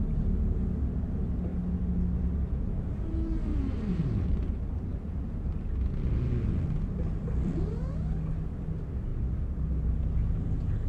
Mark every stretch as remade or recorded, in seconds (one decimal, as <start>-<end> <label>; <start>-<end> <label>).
0.0-3.5 recorded; 3.5-5.5 remade; 5.5-10.9 recorded